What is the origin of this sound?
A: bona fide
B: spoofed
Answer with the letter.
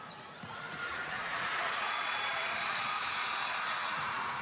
B